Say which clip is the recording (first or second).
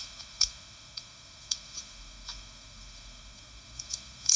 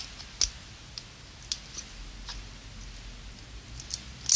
second